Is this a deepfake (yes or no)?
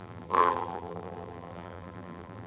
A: yes